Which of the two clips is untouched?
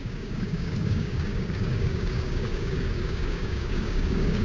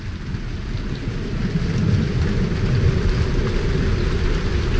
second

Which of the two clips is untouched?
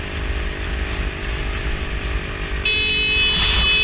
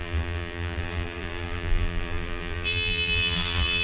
first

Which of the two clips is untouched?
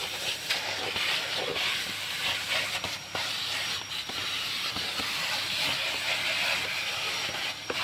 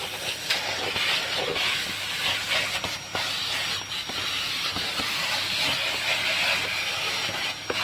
second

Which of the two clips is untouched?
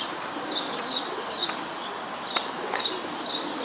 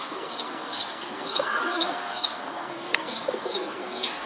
first